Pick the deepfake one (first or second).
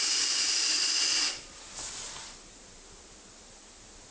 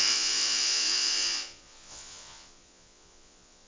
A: second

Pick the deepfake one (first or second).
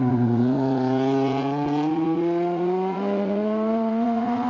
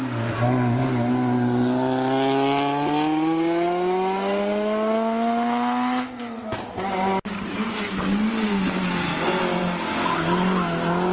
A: first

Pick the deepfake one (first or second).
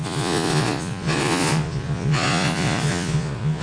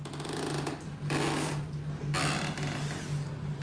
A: first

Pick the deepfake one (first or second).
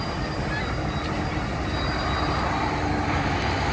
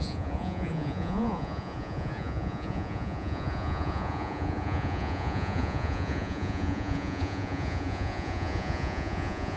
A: second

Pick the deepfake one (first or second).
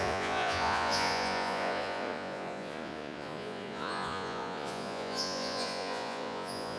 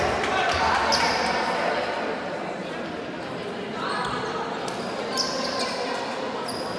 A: first